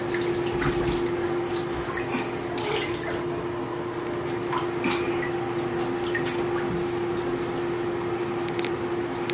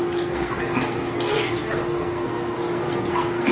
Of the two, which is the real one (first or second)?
first